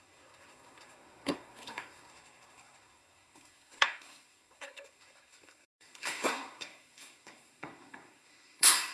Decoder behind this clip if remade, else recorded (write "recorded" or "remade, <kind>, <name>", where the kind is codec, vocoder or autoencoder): remade, codec, SNAC